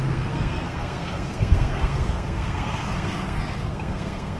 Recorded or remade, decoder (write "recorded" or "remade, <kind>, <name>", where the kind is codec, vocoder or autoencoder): remade, codec, SNAC